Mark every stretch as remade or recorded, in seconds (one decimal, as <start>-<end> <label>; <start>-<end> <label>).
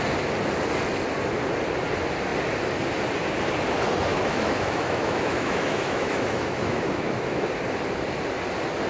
0.0-4.1 recorded; 4.1-7.5 remade; 7.5-8.9 recorded